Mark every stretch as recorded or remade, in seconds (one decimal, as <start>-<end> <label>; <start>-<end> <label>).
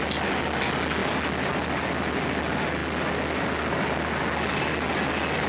0.0-5.5 recorded